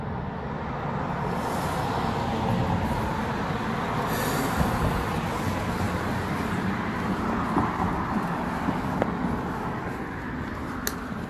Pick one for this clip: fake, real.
real